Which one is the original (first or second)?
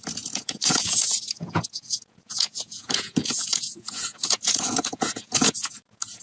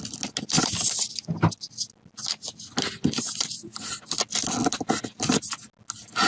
second